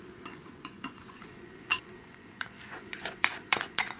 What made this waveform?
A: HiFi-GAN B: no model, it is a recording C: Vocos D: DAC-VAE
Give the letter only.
C